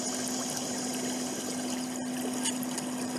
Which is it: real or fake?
real